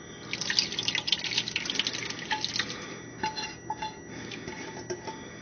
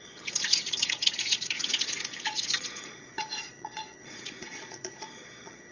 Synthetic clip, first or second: second